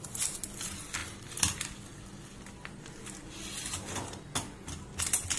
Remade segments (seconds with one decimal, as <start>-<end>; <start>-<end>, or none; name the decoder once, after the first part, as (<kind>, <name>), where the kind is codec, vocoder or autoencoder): none